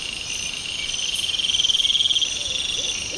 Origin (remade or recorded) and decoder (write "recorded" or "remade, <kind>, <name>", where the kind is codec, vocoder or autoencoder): recorded